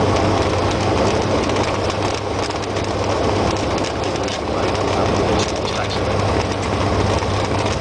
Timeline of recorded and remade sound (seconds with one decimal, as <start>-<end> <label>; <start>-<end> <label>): 0.0-7.8 recorded